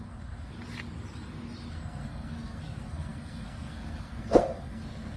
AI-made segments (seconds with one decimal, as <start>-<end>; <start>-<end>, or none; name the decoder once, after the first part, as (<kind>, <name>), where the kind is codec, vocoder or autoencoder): 0.0-0.5 (codec, SNAC); 1.7-5.2